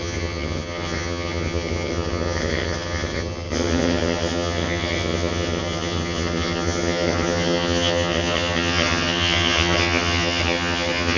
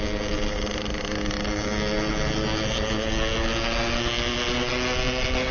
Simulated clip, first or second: first